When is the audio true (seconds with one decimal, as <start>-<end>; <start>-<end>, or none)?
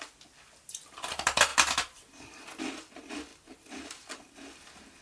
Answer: 0.0-5.0